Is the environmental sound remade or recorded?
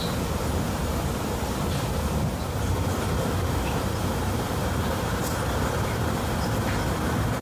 remade